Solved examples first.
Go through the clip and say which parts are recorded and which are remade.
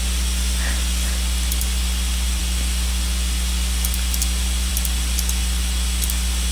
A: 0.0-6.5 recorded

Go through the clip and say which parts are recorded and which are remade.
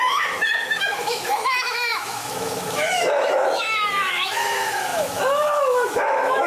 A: 0.0-6.5 remade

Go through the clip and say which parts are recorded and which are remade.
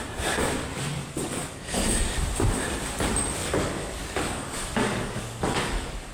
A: 0.0-1.0 recorded; 1.0-1.6 remade; 1.6-3.4 recorded; 3.4-6.1 remade